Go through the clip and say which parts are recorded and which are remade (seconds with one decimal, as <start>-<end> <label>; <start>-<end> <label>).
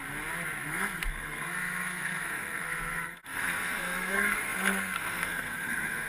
0.0-0.6 recorded; 0.6-6.1 remade